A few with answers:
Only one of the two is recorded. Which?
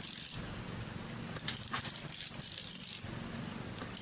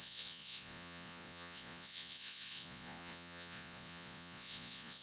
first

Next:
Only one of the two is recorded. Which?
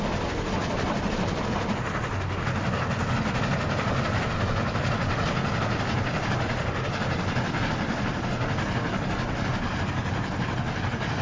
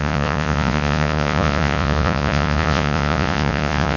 first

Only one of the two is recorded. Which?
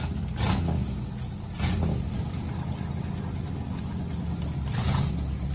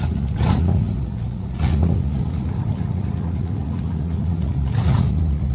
first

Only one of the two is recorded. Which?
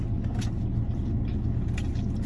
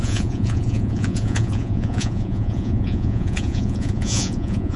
first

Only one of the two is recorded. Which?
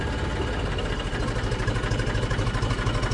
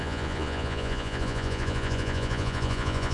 first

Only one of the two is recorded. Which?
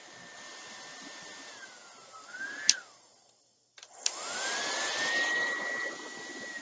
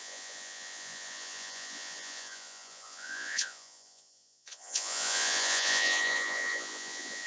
first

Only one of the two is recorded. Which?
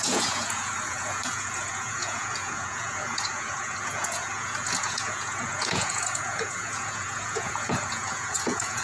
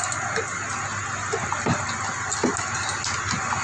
second